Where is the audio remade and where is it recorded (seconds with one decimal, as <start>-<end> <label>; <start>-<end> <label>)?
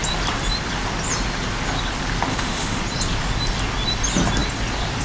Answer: 0.0-2.3 recorded; 2.3-2.8 remade; 2.8-5.0 recorded